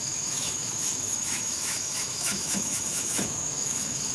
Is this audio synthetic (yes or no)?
yes